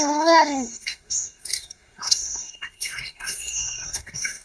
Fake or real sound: fake